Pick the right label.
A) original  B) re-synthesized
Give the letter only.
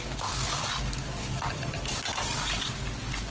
A